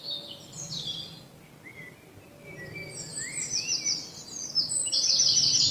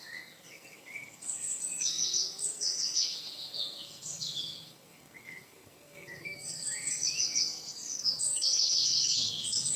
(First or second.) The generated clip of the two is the second